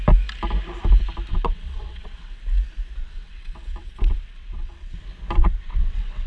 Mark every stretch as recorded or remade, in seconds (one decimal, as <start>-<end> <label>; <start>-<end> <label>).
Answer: 0.0-1.3 recorded; 1.3-2.4 remade; 2.4-3.0 recorded; 3.0-5.0 remade; 5.0-5.4 recorded; 5.4-6.3 remade